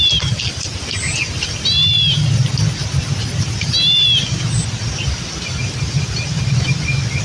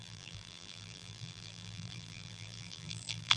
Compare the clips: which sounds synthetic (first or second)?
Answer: second